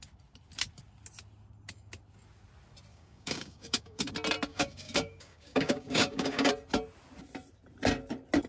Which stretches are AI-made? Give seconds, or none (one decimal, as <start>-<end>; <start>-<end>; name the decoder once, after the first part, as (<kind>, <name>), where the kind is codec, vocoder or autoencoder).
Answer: 2.9-4.1 (codec, DAC); 4.5-6.5